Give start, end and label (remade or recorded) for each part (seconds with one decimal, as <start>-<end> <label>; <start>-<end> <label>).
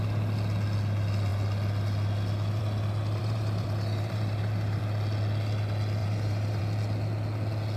0.0-3.2 recorded; 3.2-4.8 remade; 4.8-6.0 recorded; 6.0-6.6 remade; 6.6-7.8 recorded